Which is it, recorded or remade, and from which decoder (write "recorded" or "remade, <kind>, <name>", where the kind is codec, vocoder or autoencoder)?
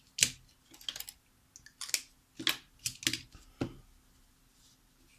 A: recorded